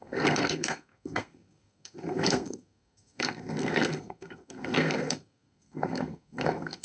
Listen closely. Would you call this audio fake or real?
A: fake